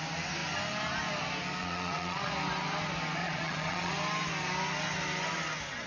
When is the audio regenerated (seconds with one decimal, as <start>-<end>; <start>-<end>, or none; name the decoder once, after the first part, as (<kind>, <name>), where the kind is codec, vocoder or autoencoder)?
1.6-2.3 (vocoder, Vocos); 3.2-3.9